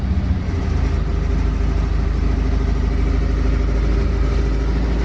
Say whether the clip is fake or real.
real